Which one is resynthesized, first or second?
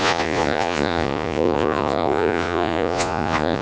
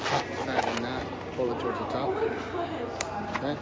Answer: first